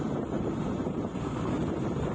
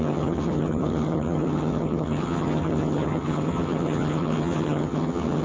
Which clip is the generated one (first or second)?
second